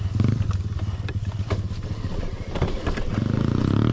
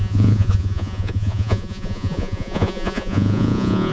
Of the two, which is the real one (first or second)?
first